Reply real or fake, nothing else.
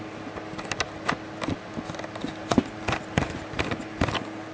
real